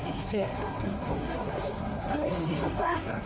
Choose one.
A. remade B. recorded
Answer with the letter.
A